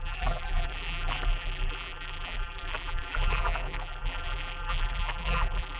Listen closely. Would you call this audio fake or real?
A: fake